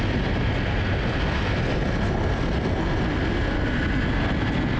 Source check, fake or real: real